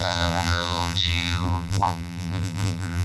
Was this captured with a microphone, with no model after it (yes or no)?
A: no